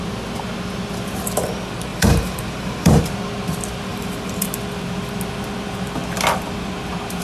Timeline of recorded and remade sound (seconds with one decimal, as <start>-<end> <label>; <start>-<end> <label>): 0.0-1.9 recorded; 1.9-3.0 remade; 3.0-3.9 recorded; 3.9-4.4 remade; 4.4-7.2 recorded